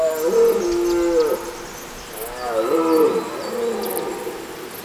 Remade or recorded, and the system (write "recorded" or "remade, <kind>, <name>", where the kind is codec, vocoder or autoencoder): recorded